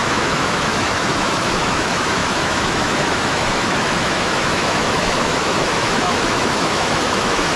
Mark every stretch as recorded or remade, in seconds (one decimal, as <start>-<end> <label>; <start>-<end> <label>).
0.0-7.6 remade

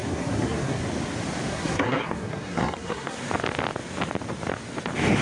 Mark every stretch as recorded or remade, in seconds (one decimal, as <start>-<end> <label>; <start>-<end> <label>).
0.0-0.8 remade; 0.8-1.5 recorded; 1.5-3.2 remade; 3.2-5.2 recorded

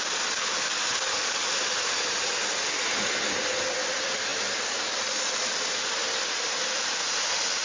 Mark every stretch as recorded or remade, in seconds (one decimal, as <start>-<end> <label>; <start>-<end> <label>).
0.0-7.6 recorded

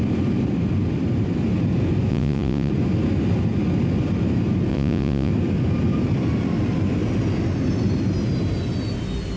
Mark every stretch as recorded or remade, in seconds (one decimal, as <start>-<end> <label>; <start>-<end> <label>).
0.0-2.1 recorded; 2.1-2.7 remade; 2.7-4.7 recorded; 4.7-5.3 remade; 5.3-9.4 recorded

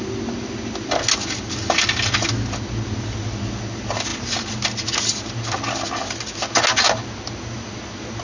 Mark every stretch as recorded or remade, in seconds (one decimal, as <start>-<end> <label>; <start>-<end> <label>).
0.0-8.2 recorded

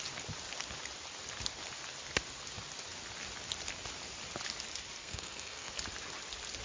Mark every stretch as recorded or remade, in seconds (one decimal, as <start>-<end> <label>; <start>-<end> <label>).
0.0-5.0 recorded; 5.0-5.7 remade; 5.7-6.6 recorded

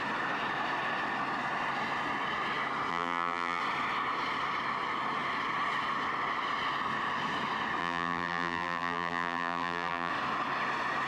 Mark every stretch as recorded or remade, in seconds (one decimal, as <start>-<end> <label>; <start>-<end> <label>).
0.0-2.9 recorded; 2.9-3.6 remade; 3.6-7.8 recorded; 7.8-10.1 remade; 10.1-11.1 recorded